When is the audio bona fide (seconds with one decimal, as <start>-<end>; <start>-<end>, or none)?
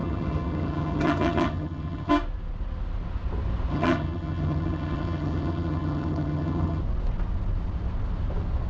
2.1-3.7; 6.8-8.7